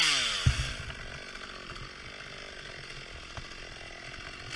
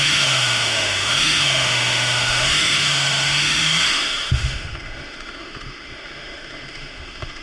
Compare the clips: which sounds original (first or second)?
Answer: first